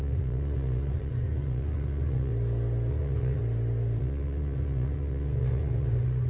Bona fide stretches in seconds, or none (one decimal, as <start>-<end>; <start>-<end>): 2.3-2.9; 3.4-4.0